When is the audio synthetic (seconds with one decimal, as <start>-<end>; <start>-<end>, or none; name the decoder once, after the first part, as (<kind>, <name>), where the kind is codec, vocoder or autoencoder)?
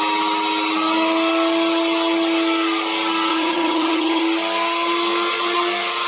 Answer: 3.3-4.2 (vocoder, HiFi-GAN)